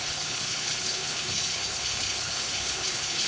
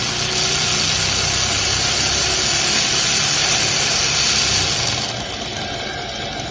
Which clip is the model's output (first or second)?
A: first